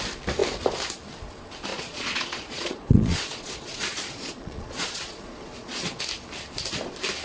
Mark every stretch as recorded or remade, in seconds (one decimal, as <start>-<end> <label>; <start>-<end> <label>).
0.0-1.7 recorded; 1.7-6.0 remade; 6.0-7.2 recorded